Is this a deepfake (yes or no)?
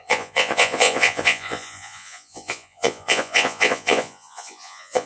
yes